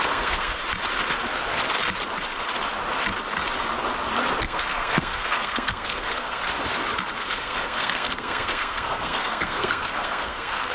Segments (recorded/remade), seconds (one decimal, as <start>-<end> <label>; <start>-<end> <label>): 0.0-0.6 remade; 0.6-4.4 recorded; 4.4-6.4 remade; 6.4-7.1 recorded; 7.1-10.7 remade